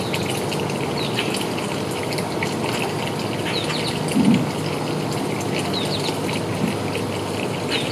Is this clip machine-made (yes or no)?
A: no